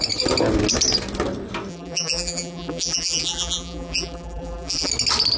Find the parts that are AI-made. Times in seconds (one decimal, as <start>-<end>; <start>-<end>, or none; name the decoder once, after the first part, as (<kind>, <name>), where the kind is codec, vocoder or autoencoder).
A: 1.7-4.9 (vocoder, BigVGAN v2)